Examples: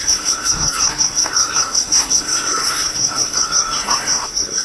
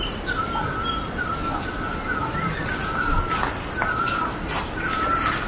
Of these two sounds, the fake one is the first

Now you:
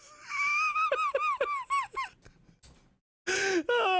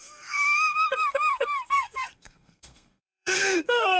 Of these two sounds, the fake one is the second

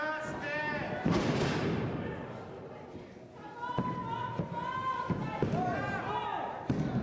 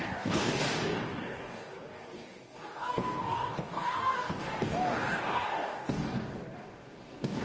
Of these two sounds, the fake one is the second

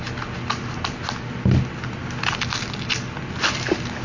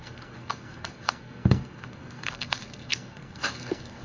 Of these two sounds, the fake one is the second